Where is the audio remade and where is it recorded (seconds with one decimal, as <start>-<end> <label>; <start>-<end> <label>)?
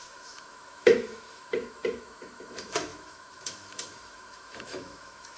0.0-5.4 remade